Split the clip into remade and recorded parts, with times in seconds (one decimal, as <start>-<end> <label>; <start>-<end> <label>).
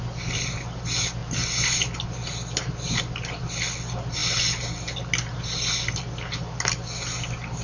0.0-7.6 recorded